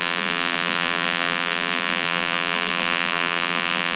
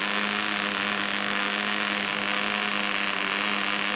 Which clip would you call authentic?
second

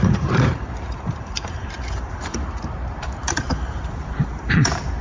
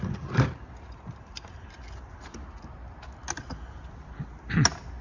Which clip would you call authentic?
second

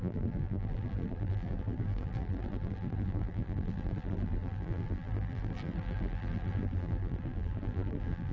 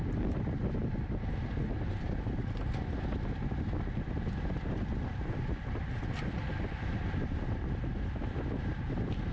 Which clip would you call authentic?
second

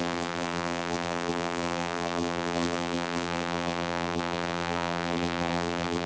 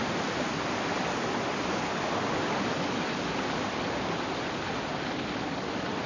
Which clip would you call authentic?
second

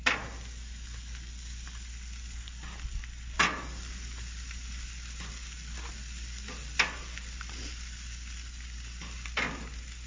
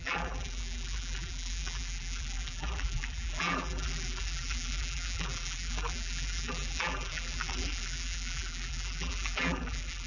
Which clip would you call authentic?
first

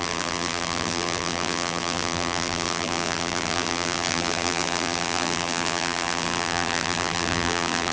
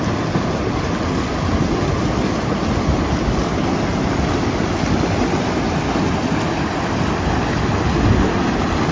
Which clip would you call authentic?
second